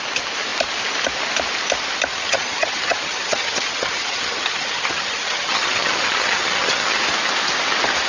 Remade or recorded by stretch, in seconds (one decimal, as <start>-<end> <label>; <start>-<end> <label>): 0.0-2.1 recorded; 2.1-7.0 remade; 7.0-8.1 recorded